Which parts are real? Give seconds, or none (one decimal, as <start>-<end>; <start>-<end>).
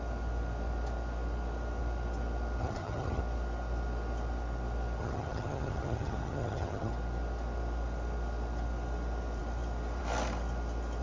0.0-2.6; 3.2-5.0; 6.9-11.0